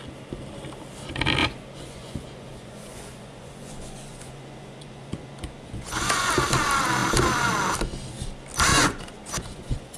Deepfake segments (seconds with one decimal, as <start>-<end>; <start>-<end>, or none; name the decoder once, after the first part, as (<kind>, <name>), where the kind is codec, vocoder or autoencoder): 1.4-6.3 (vocoder, Vocos); 8.7-10.0